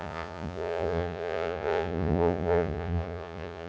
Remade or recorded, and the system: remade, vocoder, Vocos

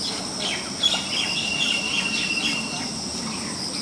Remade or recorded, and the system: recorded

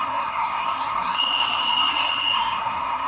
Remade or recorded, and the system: remade, codec, SNAC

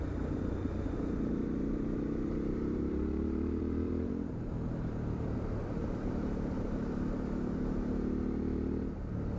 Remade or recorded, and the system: remade, vocoder, BigVGAN v2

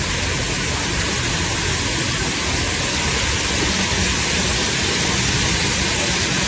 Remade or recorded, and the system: recorded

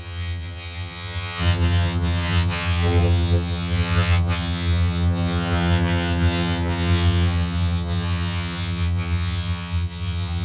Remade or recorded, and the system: remade, vocoder, HiFi-GAN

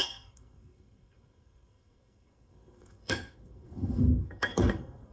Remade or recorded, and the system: remade, codec, SNAC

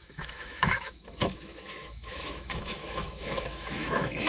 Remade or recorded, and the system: remade, autoencoder, DAC-VAE